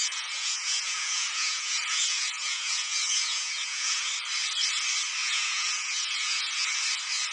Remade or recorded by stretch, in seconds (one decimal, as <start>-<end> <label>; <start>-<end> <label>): 0.0-4.1 remade; 4.1-5.2 recorded; 5.2-6.8 remade; 6.8-7.3 recorded